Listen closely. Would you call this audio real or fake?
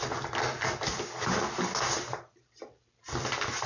real